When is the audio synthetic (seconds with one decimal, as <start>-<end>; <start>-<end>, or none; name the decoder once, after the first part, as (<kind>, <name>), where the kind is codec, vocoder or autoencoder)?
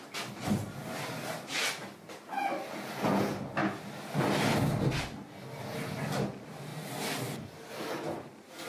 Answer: 3.6-4.2 (vocoder, BigVGAN v2); 6.7-7.7